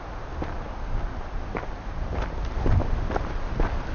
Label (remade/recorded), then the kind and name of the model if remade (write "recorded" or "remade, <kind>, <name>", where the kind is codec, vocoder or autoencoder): recorded